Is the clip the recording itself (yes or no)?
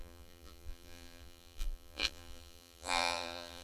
no